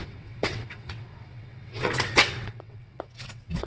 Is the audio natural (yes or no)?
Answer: no